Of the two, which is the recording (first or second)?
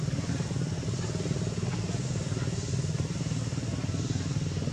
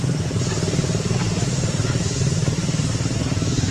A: first